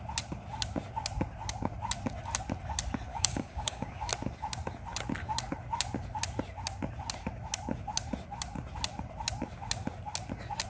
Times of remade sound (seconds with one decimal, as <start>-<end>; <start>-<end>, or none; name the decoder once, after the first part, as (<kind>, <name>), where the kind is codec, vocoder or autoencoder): 3.1-4.1 (codec, DAC)